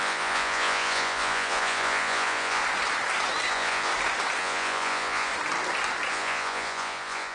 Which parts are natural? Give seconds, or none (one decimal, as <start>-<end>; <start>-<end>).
2.6-3.5; 3.9-4.4; 5.3-6.1